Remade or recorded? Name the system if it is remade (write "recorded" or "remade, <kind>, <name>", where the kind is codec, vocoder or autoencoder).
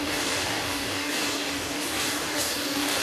remade, codec, DAC